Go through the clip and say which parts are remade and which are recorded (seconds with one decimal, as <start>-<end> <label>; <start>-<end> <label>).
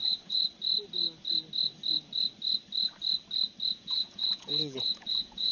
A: 0.0-0.4 remade; 0.4-3.7 recorded; 3.7-5.5 remade